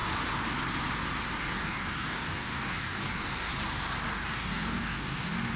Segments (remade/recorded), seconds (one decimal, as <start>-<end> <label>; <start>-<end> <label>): 0.0-1.4 recorded; 1.4-3.5 remade; 3.5-4.1 recorded; 4.1-5.6 remade